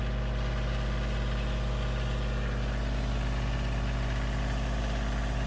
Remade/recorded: recorded